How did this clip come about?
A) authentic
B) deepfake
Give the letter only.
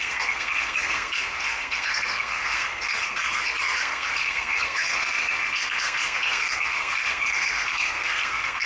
B